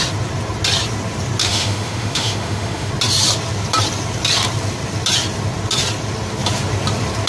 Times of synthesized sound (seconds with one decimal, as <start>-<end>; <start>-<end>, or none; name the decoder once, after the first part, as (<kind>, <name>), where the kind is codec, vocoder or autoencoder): 1.4-2.9 (autoencoder, DAC-VAE)